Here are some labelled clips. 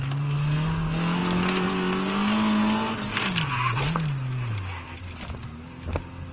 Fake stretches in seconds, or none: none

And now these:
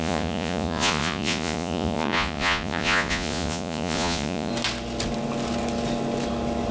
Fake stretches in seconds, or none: 0.0-4.5 (vocoder, Vocos)

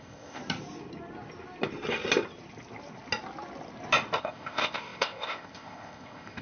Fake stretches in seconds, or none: 0.0-0.4 (codec, ZipCodec); 4.2-6.4

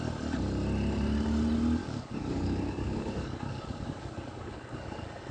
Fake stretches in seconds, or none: 1.8-5.3 (codec, DAC)

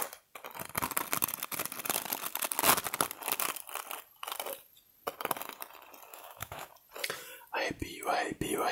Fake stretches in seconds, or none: 6.1-6.7 (autoencoder, DAC-VAE)